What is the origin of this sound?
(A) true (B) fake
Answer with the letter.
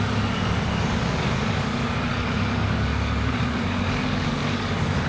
B